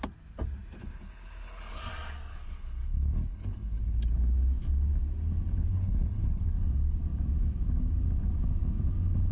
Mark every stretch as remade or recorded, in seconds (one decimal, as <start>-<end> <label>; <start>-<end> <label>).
0.0-0.8 recorded; 0.8-1.8 remade; 1.8-2.3 recorded; 2.3-3.8 remade; 3.8-5.7 recorded; 5.7-6.5 remade; 6.5-9.3 recorded